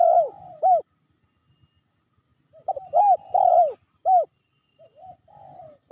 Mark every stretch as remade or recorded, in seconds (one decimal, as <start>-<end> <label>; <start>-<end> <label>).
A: 0.0-5.9 recorded